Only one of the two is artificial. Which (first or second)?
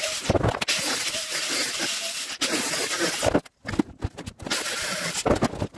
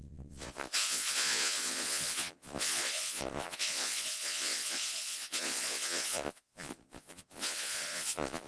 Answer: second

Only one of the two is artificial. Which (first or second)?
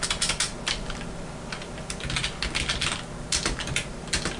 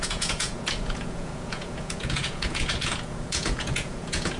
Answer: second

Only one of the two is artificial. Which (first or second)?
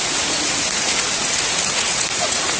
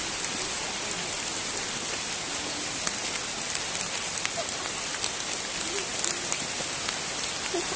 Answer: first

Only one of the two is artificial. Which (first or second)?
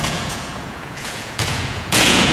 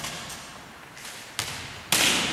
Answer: first